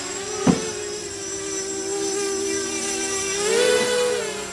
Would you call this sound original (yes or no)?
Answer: yes